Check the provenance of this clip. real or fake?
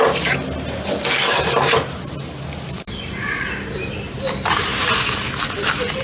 real